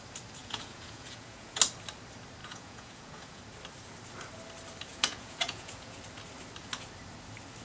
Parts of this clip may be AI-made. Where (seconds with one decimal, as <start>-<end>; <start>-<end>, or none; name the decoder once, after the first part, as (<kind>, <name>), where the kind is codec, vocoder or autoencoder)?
0.4-1.6 (vocoder, Vocos); 2.4-3.4; 4.9-6.0

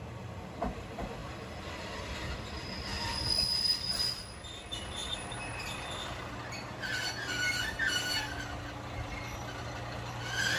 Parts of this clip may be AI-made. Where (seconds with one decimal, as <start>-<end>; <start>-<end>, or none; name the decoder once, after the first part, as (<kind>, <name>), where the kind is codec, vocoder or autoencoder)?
none

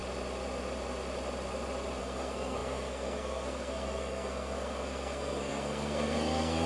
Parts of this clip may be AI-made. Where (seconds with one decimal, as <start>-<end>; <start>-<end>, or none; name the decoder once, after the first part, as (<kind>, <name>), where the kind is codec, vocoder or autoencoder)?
2.0-6.7 (codec, SNAC)

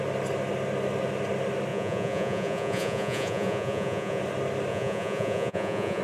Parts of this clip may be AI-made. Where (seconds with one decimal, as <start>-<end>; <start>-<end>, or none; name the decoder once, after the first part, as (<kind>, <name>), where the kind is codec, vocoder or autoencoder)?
1.7-4.2 (vocoder, Vocos); 4.7-6.0

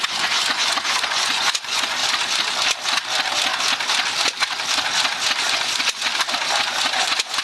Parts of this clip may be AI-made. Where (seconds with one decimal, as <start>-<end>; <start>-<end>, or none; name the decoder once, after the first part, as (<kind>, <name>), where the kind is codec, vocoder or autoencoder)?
0.0-2.0 (vocoder, Vocos); 5.4-6.1; 6.7-7.4

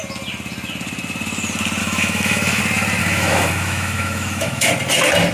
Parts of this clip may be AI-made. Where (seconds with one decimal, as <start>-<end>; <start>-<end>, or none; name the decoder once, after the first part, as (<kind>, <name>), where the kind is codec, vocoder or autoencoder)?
1.8-2.6 (autoencoder, DAC-VAE); 3.0-4.7

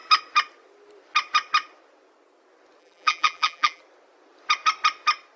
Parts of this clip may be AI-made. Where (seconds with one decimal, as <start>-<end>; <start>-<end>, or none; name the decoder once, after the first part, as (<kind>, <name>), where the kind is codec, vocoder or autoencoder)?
2.8-3.8 (vocoder, BigVGAN v2)